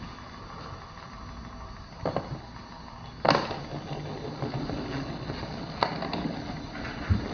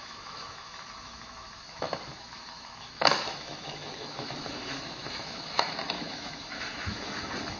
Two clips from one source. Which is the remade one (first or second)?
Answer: second